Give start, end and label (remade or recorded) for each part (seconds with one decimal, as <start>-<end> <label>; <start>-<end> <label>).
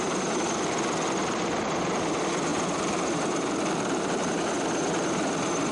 0.0-2.5 recorded; 2.5-4.4 remade; 4.4-5.7 recorded